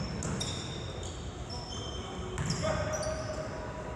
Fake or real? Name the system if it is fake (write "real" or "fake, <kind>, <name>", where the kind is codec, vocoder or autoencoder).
real